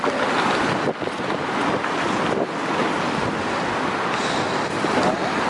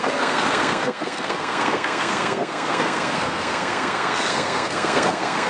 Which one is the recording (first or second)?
first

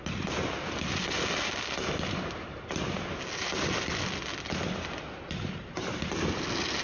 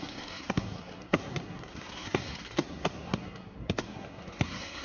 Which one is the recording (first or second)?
first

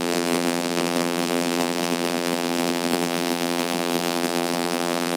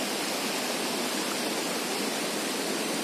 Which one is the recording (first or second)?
second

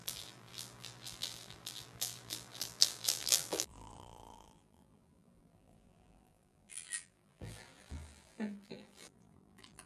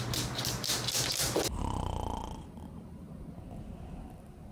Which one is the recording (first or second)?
second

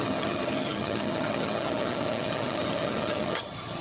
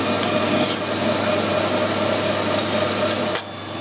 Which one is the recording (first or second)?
second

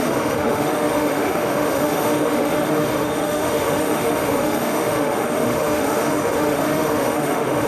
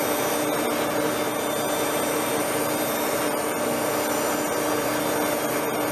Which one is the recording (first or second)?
second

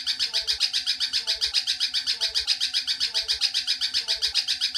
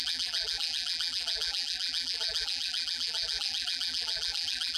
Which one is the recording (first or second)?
first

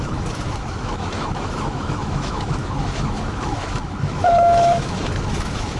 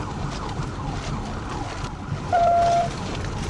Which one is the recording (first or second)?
second